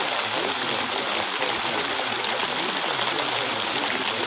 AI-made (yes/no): no